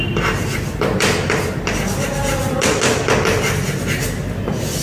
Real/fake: real